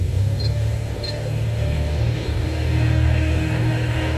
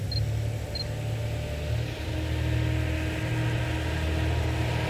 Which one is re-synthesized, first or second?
first